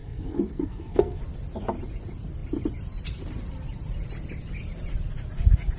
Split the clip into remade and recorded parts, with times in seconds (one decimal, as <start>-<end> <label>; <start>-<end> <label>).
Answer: 0.0-1.2 remade; 1.2-5.8 recorded